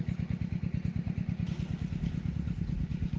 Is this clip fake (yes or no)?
no